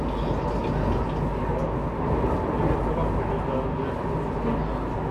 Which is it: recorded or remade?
recorded